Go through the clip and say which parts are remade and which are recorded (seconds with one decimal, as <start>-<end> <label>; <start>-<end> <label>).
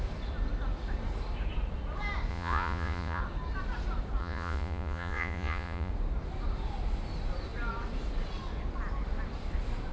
0.0-2.3 recorded; 2.3-3.2 remade; 3.2-4.2 recorded; 4.2-5.9 remade; 5.9-9.9 recorded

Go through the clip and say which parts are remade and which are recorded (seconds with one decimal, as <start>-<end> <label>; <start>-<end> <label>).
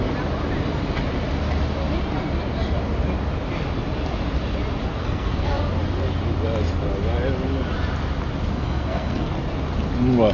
0.0-5.0 recorded; 5.0-5.6 remade; 5.6-8.5 recorded; 8.5-9.3 remade; 9.3-10.3 recorded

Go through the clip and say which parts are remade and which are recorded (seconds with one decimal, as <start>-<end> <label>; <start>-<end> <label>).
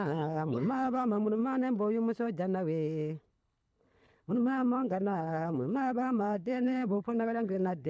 0.0-1.4 remade; 1.4-3.3 recorded; 3.3-7.9 remade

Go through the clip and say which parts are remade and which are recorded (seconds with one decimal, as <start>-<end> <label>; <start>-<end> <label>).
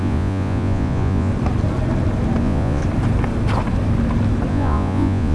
0.0-1.3 remade; 1.3-2.4 recorded; 2.4-2.8 remade; 2.8-4.5 recorded; 4.5-5.3 remade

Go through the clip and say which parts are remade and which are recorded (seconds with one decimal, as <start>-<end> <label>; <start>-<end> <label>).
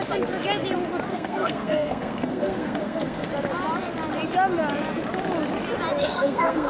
0.0-1.1 recorded; 1.1-3.3 remade; 3.3-6.0 recorded; 6.0-6.7 remade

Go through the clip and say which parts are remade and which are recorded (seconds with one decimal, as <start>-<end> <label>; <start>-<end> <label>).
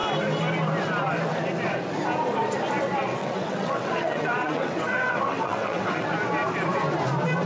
0.0-3.2 recorded; 3.2-6.1 remade; 6.1-7.5 recorded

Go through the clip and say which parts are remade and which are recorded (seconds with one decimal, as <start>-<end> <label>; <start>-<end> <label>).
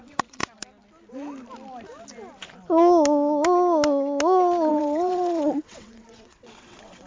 0.0-0.4 remade; 0.4-4.7 recorded; 4.7-7.1 remade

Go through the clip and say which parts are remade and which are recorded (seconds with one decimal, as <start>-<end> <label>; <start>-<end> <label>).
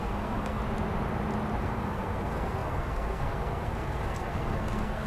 0.0-0.6 remade; 0.6-1.6 recorded; 1.6-5.1 remade